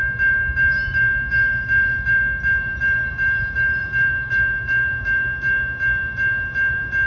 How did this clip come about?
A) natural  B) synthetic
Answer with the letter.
B